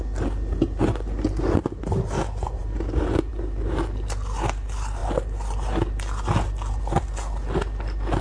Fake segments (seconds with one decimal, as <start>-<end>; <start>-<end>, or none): none

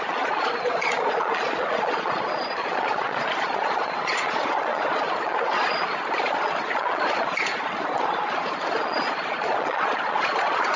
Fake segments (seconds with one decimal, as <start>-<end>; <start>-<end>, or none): 0.0-10.8

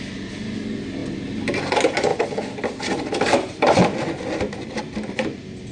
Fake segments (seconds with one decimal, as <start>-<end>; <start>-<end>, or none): none

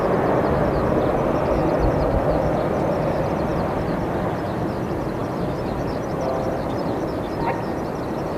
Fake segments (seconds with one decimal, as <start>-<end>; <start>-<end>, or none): none

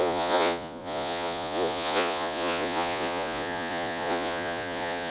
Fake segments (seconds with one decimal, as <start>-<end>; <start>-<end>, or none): 0.0-5.1

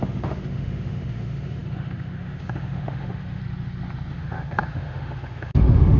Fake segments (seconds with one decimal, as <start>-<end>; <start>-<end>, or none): 0.0-3.4; 4.1-6.0

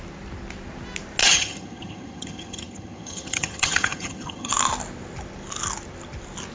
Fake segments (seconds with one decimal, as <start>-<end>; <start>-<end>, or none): 1.2-4.5

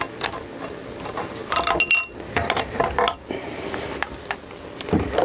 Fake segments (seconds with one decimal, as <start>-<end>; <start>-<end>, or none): none